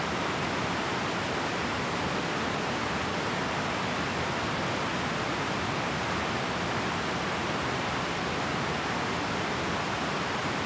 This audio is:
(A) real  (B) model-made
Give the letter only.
A